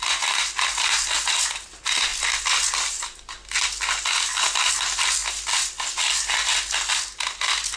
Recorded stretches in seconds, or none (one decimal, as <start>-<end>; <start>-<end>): 0.0-7.8